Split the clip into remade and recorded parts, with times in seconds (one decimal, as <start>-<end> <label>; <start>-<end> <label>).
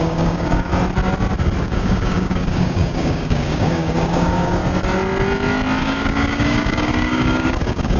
0.0-0.7 remade; 0.7-1.6 recorded; 1.6-4.6 remade; 4.6-5.8 recorded; 5.8-8.0 remade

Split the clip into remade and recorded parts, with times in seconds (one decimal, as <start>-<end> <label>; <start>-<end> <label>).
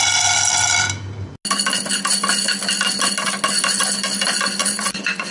0.0-4.6 recorded; 4.6-5.3 remade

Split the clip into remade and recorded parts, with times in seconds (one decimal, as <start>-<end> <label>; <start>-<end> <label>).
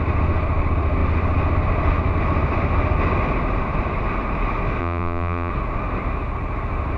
0.0-4.8 recorded; 4.8-5.5 remade; 5.5-7.0 recorded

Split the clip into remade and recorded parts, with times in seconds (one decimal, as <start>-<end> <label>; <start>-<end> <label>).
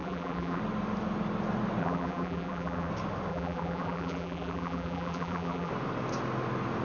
0.0-0.6 remade; 0.6-1.8 recorded; 1.8-2.9 remade; 2.9-3.3 recorded; 3.3-5.7 remade; 5.7-6.8 recorded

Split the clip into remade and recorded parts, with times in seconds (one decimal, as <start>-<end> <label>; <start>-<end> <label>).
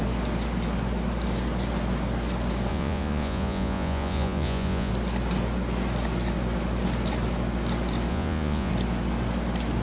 0.0-2.7 recorded; 2.7-4.9 remade; 4.9-8.1 recorded; 8.1-8.7 remade; 8.7-9.8 recorded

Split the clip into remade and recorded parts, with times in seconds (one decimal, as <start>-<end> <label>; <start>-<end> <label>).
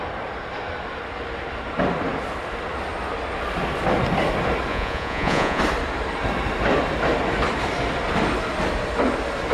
0.0-4.7 recorded; 4.7-5.6 remade; 5.6-9.5 recorded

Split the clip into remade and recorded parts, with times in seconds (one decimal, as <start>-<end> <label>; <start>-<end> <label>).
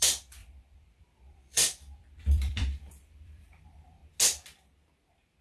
0.0-4.0 remade; 4.0-5.4 recorded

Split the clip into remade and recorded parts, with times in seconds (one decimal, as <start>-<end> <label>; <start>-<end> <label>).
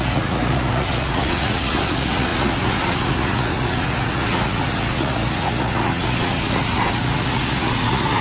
0.0-8.2 remade